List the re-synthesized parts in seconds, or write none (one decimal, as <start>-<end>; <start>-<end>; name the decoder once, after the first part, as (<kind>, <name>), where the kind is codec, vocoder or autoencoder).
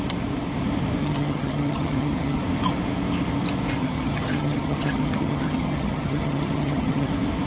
1.0-2.4 (vocoder, HiFi-GAN); 3.8-7.1